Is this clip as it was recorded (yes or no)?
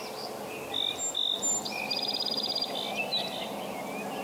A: yes